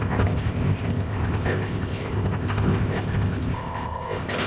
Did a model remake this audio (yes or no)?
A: yes